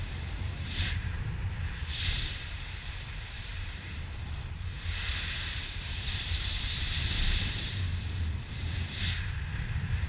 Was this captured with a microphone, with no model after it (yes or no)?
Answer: no